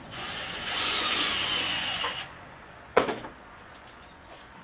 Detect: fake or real fake